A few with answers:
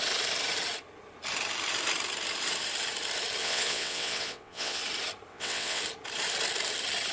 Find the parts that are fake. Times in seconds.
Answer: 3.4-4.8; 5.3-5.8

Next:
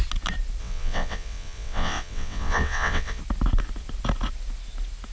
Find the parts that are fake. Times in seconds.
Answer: 0.6-3.2

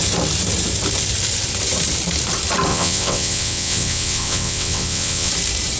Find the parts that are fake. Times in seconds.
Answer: 2.7-5.3